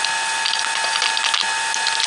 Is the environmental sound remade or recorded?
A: recorded